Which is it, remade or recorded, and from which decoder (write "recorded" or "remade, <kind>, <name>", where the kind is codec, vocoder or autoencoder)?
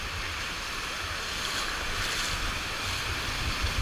recorded